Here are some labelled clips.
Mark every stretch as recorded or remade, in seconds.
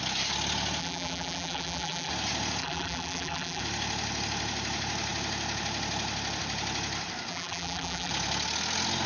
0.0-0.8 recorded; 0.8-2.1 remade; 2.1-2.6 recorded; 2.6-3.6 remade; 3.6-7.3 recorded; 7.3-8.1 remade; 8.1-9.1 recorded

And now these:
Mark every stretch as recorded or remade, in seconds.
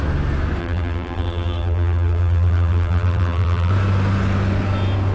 0.0-0.6 recorded; 0.6-3.7 remade; 3.7-5.1 recorded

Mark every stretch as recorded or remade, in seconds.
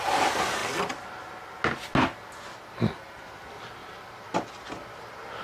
0.0-3.8 recorded; 3.8-4.7 remade; 4.7-5.4 recorded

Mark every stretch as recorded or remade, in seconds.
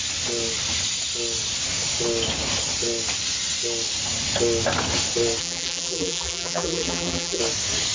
0.0-5.4 recorded; 5.4-7.4 remade; 7.4-7.9 recorded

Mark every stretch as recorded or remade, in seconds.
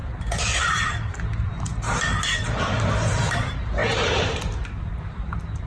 0.0-5.7 remade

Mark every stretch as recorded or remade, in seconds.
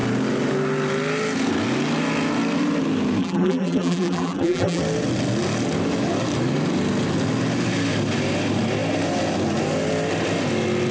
0.0-3.2 recorded; 3.2-4.8 remade; 4.8-10.9 recorded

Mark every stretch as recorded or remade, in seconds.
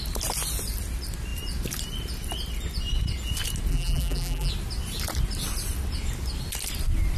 0.0-3.7 recorded; 3.7-4.5 remade; 4.5-7.2 recorded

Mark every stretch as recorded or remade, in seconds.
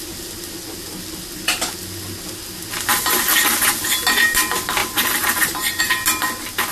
0.0-4.8 recorded; 4.8-5.8 remade; 5.8-6.7 recorded